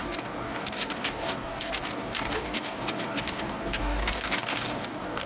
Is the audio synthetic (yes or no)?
yes